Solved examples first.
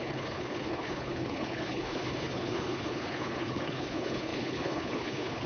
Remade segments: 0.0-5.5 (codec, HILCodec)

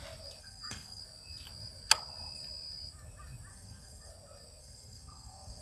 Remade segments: 0.4-1.0 (codec, SNAC); 3.5-4.1; 4.6-5.6

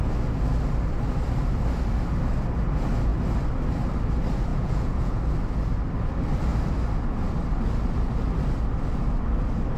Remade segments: 4.5-5.2 (vocoder, Vocos)

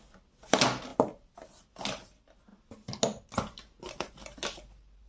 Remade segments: none

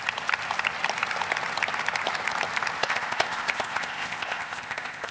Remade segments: 2.8-5.1 (codec, ZipCodec)

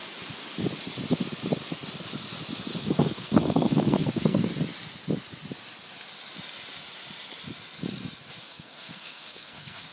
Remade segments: 2.8-4.5 (codec, SNAC); 8.4-9.9